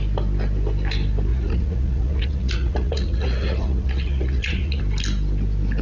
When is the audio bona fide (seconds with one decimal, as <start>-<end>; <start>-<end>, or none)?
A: 0.0-1.3; 4.8-5.8